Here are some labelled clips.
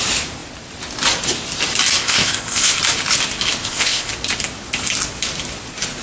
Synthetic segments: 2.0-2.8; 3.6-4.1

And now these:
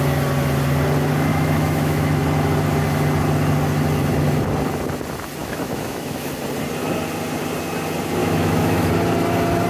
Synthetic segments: 1.3-2.2; 5.4-6.3; 8.2-8.9

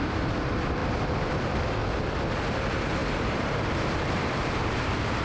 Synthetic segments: 0.0-1.8; 2.4-5.2

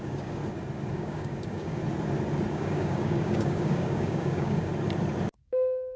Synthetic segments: 0.0-0.4; 0.9-1.8; 2.5-4.7; 5.4-6.0

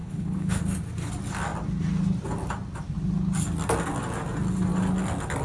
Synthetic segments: 0.0-0.6

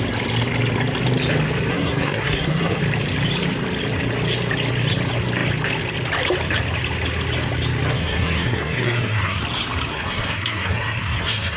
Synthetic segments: 1.7-2.8; 7.9-9.4; 9.9-11.6

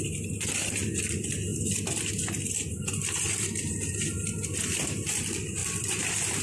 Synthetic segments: none